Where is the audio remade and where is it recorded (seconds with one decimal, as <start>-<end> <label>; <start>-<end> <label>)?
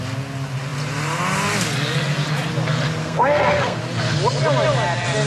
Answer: 0.0-3.0 recorded; 3.0-3.8 remade; 3.8-5.3 recorded